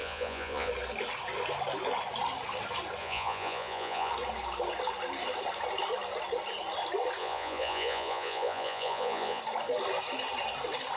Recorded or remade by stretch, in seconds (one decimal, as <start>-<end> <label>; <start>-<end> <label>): 0.0-0.7 remade; 0.7-3.0 recorded; 3.0-4.1 remade; 4.1-7.2 recorded; 7.2-9.4 remade; 9.4-11.0 recorded